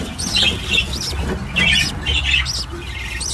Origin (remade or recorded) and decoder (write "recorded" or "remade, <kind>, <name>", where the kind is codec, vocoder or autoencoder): recorded